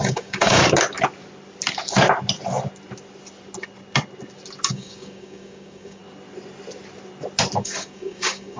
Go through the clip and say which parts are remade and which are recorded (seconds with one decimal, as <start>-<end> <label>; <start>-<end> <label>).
0.0-0.6 remade; 0.6-4.7 recorded; 4.7-6.0 remade; 6.0-7.6 recorded; 7.6-8.6 remade